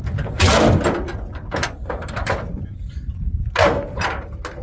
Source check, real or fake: real